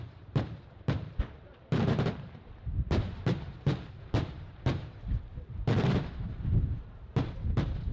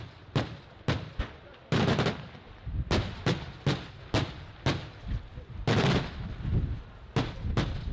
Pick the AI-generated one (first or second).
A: first